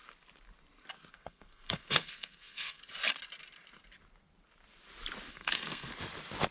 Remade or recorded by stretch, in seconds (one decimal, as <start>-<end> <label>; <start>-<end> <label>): 0.0-1.1 recorded; 1.1-2.8 remade; 2.8-5.3 recorded; 5.3-5.9 remade; 5.9-6.5 recorded